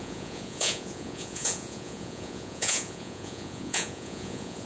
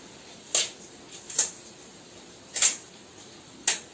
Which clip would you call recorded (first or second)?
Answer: second